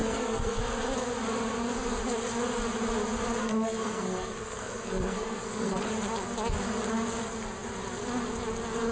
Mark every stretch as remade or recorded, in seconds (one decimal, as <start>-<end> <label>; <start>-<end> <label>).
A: 0.0-0.6 remade; 0.6-3.4 recorded; 3.4-5.9 remade; 5.9-8.9 recorded